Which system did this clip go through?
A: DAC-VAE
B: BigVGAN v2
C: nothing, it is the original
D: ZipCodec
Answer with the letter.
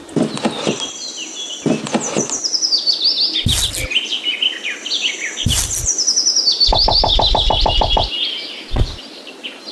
C